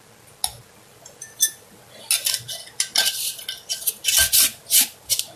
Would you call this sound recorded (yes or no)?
yes